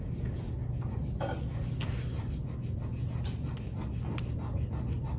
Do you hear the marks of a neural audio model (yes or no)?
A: no